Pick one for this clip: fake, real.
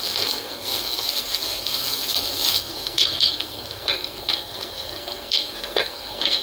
fake